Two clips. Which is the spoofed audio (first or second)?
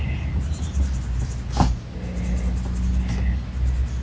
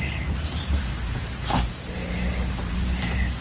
second